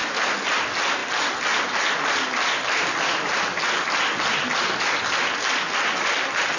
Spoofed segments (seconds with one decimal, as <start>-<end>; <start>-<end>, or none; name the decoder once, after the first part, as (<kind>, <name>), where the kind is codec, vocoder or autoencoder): 0.0-0.6 (vocoder, BigVGAN v2)